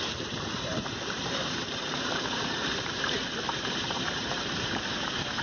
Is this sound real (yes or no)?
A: no